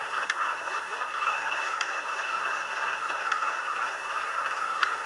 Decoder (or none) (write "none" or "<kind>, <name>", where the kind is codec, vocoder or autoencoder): codec, SNAC